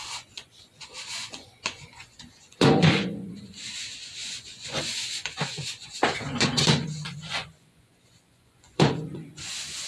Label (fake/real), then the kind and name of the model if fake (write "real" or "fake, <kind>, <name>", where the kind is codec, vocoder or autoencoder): fake, vocoder, Vocos